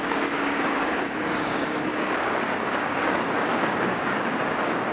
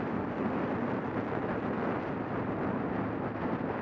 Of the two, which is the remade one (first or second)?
first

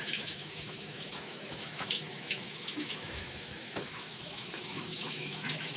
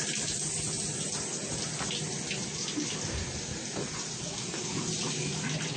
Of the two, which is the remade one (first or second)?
first